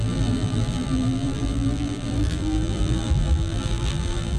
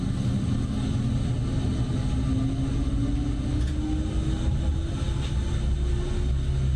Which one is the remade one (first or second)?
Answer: first